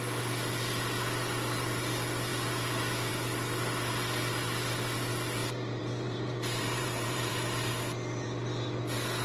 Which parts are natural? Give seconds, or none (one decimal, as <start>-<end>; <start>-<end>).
0.0-5.4; 7.3-9.2